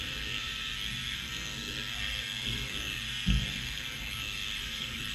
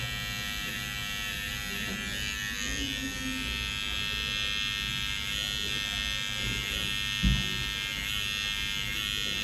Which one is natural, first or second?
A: second